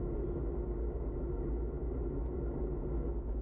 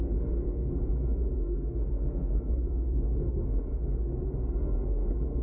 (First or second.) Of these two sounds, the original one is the first